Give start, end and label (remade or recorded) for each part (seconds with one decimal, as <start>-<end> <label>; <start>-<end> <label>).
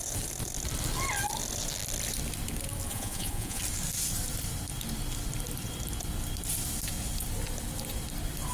0.0-2.9 recorded; 2.9-3.6 remade; 3.6-8.5 recorded